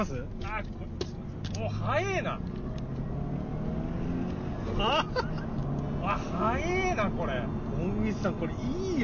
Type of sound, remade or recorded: recorded